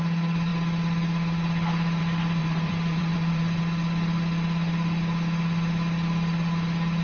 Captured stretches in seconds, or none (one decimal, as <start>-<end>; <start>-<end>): 0.0-2.4; 3.6-7.0